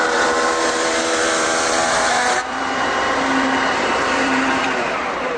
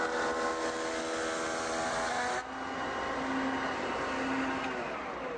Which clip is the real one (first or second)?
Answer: second